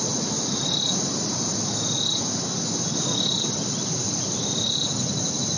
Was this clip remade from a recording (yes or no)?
no